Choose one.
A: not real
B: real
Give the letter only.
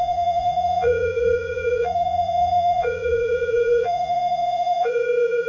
A